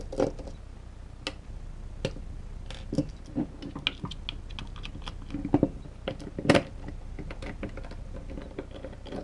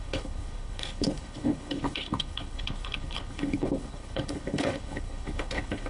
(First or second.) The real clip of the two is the first